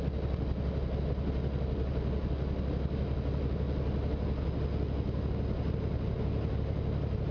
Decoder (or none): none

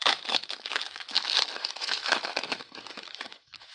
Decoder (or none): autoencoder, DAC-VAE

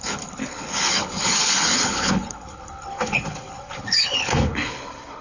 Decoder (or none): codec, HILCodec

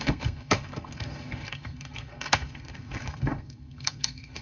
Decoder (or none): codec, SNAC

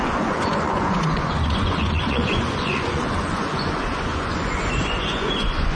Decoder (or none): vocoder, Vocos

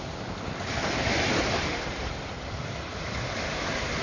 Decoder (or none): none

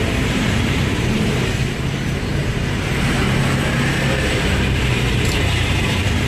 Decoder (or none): vocoder, BigVGAN v2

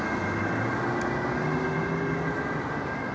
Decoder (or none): none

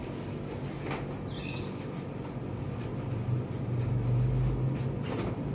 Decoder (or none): none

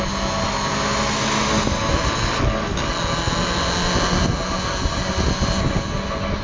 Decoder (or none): none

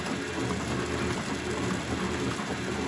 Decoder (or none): none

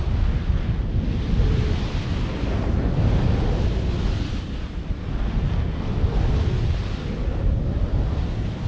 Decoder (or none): none